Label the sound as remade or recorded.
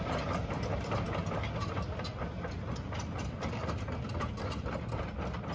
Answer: recorded